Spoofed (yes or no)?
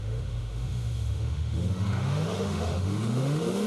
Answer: yes